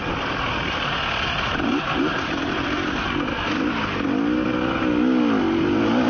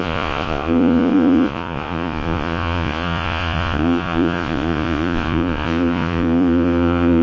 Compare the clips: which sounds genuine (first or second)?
first